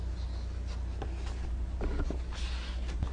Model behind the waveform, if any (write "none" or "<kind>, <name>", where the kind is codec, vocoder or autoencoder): none